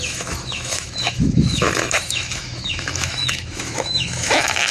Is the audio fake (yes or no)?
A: yes